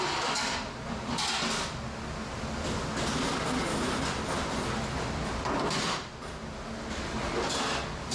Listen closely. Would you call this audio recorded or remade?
recorded